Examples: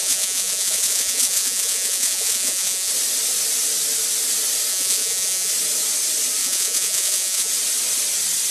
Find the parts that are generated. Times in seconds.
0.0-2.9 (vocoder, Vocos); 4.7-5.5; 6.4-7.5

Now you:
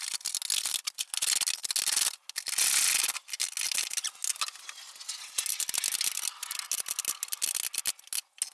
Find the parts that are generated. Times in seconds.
none